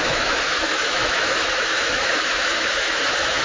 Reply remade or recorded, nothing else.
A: remade